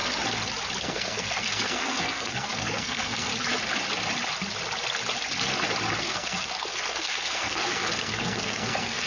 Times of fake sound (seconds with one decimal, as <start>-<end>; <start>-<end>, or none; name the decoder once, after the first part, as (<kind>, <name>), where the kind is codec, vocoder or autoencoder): 0.8-3.3 (codec, SNAC); 6.0-9.1